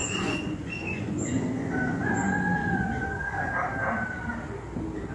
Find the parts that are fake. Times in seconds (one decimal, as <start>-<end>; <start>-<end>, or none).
0.0-2.1; 2.6-3.5